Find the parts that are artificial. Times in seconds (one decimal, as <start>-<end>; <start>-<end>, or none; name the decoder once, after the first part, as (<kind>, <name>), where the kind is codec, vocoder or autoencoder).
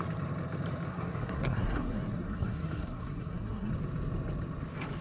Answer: 0.9-3.7 (codec, SNAC)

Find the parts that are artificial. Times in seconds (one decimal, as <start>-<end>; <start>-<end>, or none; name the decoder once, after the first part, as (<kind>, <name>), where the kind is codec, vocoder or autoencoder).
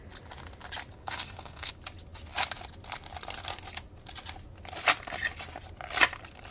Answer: 1.0-1.7 (codec, SNAC)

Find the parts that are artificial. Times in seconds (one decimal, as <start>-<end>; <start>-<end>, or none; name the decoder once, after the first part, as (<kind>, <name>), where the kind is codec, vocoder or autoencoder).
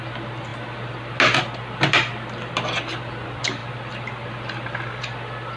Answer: none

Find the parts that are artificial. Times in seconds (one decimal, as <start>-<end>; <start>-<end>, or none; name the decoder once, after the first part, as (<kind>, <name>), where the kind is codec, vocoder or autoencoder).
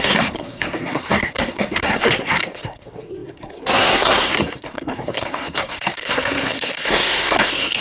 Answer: 0.0-7.8 (codec, SNAC)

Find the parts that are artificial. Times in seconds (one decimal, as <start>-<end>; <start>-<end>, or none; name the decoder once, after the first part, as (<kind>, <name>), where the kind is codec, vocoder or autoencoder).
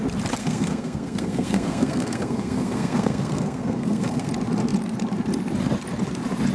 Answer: 0.4-4.3 (codec, SNAC)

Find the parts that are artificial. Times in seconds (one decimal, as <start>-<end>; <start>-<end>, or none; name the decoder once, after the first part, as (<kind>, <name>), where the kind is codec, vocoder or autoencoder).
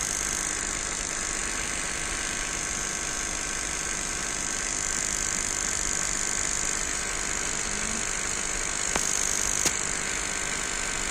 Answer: none